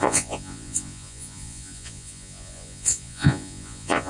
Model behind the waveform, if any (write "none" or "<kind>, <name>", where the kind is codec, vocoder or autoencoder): vocoder, Vocos